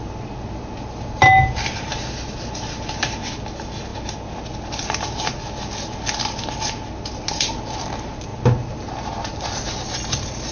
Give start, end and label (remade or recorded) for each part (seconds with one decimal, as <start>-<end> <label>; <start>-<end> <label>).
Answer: 0.0-10.5 recorded